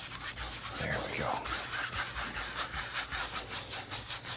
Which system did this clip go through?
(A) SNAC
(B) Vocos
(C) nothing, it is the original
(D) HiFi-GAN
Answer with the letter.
C